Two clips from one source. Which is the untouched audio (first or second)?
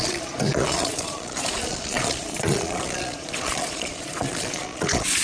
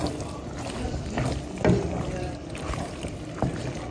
second